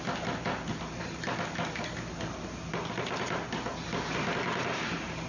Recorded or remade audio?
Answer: recorded